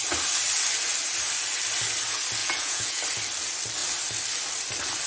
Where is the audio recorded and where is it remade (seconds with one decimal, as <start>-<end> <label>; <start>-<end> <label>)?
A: 0.0-2.4 recorded; 2.4-3.0 remade; 3.0-5.1 recorded

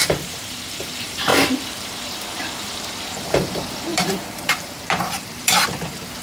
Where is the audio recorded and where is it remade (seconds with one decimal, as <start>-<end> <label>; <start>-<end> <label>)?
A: 0.0-6.2 remade

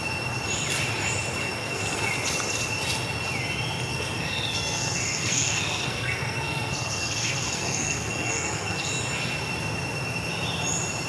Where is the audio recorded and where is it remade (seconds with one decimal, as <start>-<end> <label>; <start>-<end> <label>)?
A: 0.0-1.4 recorded; 1.4-2.1 remade; 2.1-3.9 recorded; 3.9-8.9 remade; 8.9-11.1 recorded

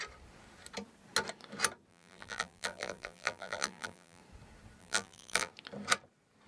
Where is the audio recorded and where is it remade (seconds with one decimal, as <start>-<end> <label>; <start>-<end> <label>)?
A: 0.0-1.9 recorded; 1.9-4.2 remade; 4.2-4.8 recorded; 4.8-5.5 remade; 5.5-6.5 recorded